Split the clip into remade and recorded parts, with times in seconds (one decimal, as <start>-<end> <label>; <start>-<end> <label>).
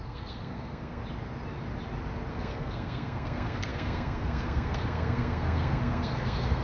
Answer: 0.0-1.0 remade; 1.0-2.3 recorded; 2.3-6.6 remade